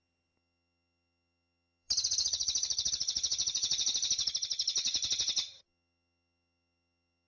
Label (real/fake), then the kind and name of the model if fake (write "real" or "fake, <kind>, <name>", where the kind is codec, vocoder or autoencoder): fake, vocoder, HiFi-GAN